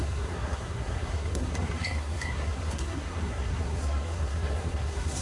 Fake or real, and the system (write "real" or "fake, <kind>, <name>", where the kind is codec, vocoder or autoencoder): fake, codec, SNAC